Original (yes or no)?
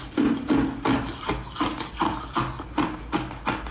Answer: yes